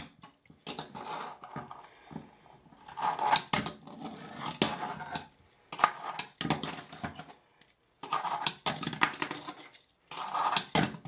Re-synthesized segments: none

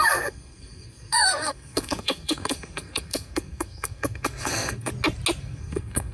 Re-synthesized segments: 0.0-4.9 (codec, SNAC); 5.4-6.1

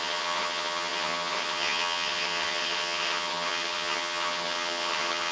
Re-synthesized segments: 0.0-5.3 (vocoder, HiFi-GAN)

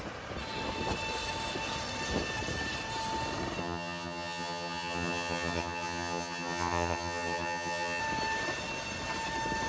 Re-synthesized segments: 3.6-8.0 (vocoder, HiFi-GAN)

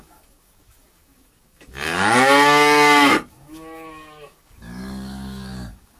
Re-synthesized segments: 0.0-6.0 (codec, DAC)

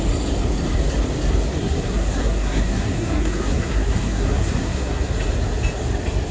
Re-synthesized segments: 1.6-5.0 (codec, SNAC)

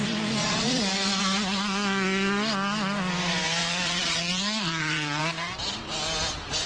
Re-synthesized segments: 0.4-1.2 (vocoder, Vocos); 3.6-5.2

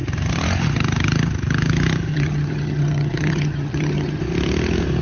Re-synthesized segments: 2.1-4.2 (vocoder, HiFi-GAN)